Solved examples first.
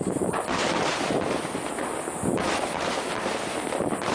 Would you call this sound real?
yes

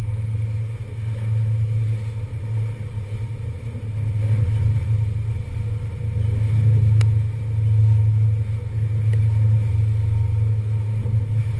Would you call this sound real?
yes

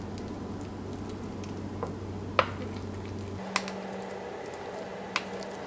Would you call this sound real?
yes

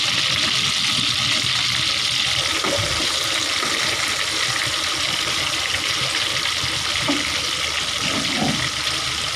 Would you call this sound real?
yes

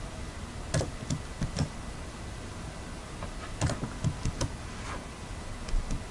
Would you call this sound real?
yes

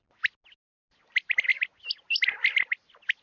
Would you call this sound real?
yes